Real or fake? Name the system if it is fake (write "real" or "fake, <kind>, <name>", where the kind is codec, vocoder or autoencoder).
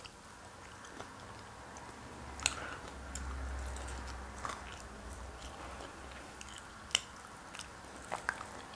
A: real